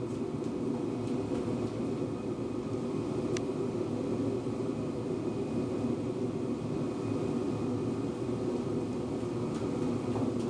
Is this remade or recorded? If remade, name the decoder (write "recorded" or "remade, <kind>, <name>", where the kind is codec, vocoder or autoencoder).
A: recorded